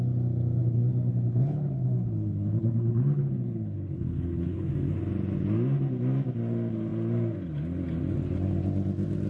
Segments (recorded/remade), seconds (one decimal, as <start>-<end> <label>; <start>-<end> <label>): 0.0-0.6 recorded; 0.6-4.7 remade; 4.7-9.3 recorded